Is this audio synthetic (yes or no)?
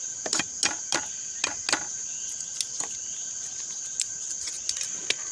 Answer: no